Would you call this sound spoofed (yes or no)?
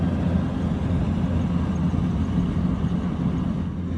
no